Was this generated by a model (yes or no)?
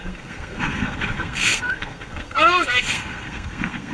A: yes